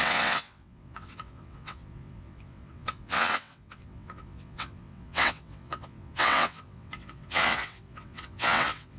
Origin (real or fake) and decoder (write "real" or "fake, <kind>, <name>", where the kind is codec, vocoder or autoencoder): fake, vocoder, WaveNeXt